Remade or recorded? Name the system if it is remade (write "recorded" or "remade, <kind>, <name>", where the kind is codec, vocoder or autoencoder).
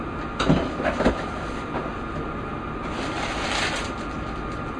recorded